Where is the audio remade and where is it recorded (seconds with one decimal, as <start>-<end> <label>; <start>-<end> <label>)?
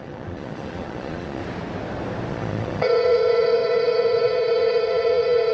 0.0-1.4 remade; 1.4-2.3 recorded; 2.3-5.5 remade